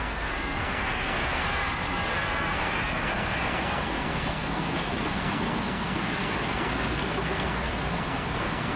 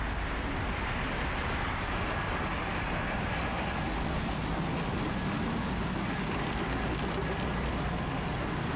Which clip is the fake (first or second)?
first